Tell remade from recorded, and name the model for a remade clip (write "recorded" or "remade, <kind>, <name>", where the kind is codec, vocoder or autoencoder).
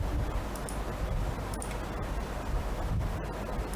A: recorded